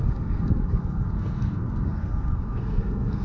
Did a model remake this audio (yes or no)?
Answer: yes